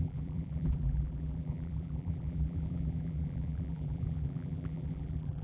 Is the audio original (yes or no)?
no